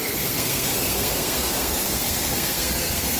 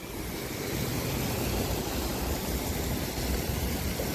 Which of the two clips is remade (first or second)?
first